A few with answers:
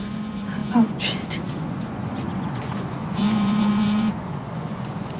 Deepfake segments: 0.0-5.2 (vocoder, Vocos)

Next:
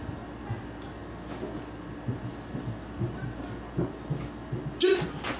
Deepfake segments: none

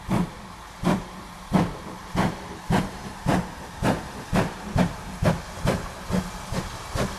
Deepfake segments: none

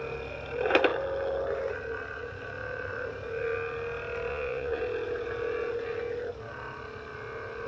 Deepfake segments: 4.3-4.8 (vocoder, Vocos)

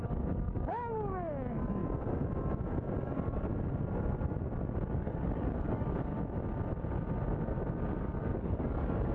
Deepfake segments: 0.0-1.8 (codec, DAC); 3.0-3.5; 4.9-6.1; 8.0-9.1

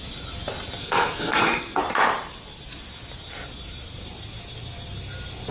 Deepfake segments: 0.8-1.8 (codec, SNAC)

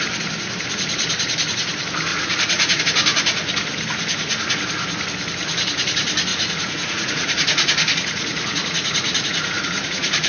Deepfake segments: 2.1-2.8 (vocoder, Vocos); 6.3-10.3